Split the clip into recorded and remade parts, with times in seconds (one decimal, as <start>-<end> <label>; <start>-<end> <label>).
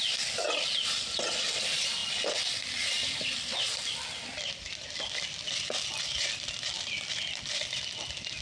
0.0-2.0 recorded; 2.0-3.8 remade; 3.8-4.3 recorded; 4.3-7.1 remade; 7.1-8.4 recorded